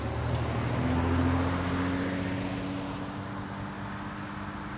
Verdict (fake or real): real